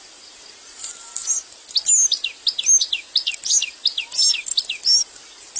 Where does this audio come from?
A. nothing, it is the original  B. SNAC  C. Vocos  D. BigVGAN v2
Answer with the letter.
A